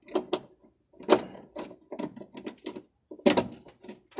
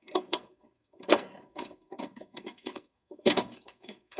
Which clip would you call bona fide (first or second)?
first